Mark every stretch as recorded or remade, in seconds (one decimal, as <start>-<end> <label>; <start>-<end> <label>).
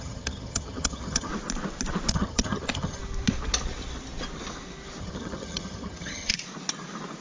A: 0.0-1.3 remade; 1.3-2.1 recorded; 2.1-3.0 remade; 3.0-5.0 recorded; 5.0-6.3 remade; 6.3-7.2 recorded